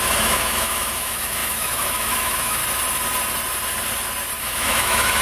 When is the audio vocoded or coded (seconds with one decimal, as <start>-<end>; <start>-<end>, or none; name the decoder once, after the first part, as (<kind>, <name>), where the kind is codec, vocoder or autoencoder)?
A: 0.0-2.6 (autoencoder, DAC-VAE); 4.4-5.2